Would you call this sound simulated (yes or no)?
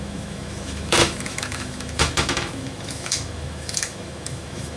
yes